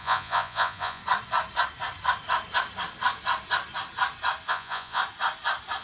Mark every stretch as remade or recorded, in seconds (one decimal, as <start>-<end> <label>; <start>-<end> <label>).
0.0-1.0 remade; 1.0-4.5 recorded; 4.5-5.0 remade; 5.0-5.8 recorded